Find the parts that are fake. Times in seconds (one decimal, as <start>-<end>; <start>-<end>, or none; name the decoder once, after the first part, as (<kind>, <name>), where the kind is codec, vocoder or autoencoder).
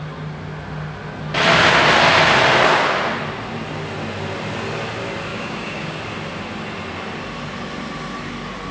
5.3-6.0 (codec, DAC)